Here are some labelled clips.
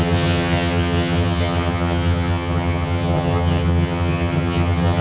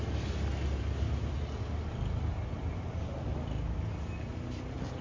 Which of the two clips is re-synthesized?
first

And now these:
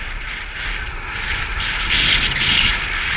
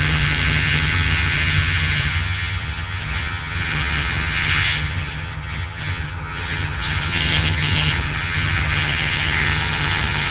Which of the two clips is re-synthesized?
second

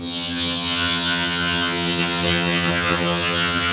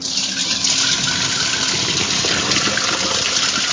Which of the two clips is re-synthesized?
first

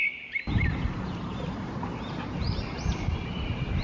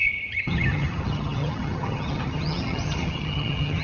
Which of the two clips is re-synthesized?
second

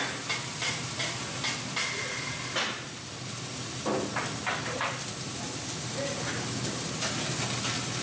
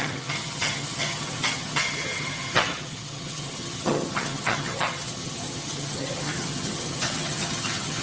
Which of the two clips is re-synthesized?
second